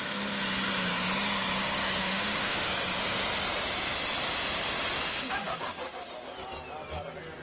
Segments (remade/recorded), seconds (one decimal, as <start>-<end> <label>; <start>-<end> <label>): 0.0-2.0 recorded; 2.0-2.7 remade; 2.7-7.4 recorded